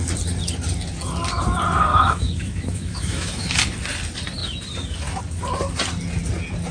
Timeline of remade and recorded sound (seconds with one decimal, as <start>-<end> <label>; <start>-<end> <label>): 0.0-1.9 recorded; 1.9-3.5 remade; 3.5-6.7 recorded